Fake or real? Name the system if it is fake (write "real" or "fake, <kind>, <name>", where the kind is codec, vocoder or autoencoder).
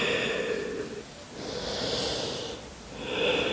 real